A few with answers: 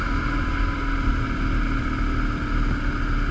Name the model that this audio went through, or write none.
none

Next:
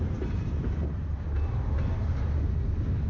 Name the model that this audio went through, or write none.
none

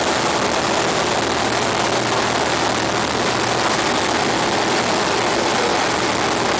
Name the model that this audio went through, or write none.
none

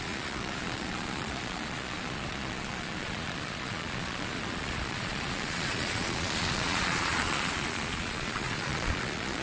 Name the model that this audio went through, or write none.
vocoder, Vocos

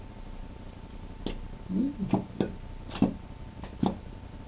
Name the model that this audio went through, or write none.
none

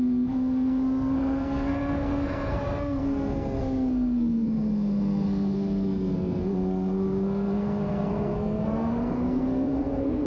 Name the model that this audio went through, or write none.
codec, SNAC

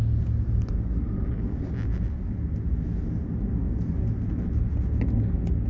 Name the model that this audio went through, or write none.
none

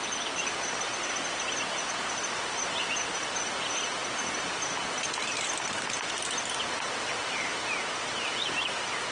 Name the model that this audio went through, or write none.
none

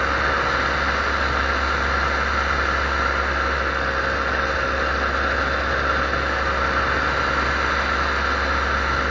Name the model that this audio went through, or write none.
none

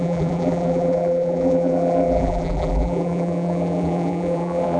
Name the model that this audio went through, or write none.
vocoder, BigVGAN v2